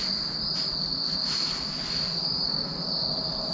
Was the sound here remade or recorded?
recorded